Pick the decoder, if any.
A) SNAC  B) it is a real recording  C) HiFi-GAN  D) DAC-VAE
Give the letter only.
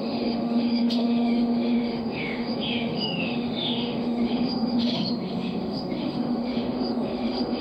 D